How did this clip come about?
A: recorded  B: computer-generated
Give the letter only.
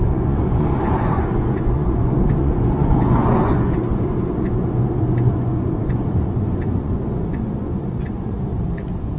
B